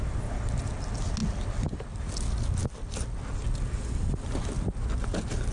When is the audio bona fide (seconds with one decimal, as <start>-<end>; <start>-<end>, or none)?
0.0-5.5